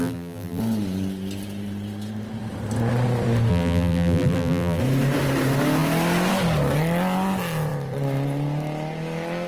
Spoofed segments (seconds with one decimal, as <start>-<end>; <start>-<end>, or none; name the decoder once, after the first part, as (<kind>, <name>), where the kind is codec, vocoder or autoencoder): 0.0-0.6 (vocoder, BigVGAN v2); 3.5-4.8